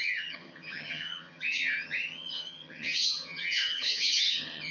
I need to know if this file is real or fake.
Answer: fake